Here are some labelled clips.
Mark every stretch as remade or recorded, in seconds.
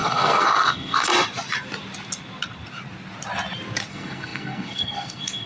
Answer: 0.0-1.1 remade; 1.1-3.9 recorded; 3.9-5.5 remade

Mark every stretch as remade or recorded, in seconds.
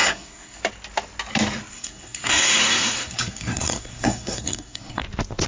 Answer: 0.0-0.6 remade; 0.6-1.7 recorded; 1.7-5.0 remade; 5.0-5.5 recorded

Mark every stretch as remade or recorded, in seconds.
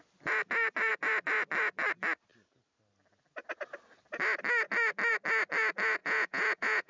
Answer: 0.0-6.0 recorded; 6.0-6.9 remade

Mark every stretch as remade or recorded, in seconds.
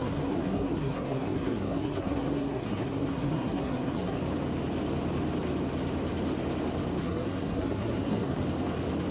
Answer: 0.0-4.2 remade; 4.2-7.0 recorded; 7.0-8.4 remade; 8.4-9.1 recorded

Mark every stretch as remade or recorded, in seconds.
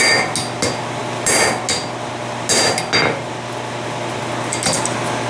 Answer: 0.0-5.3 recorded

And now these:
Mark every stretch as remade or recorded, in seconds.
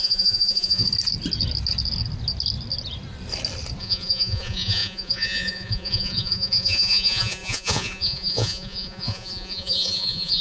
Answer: 0.0-0.8 remade; 0.8-3.8 recorded; 3.8-10.4 remade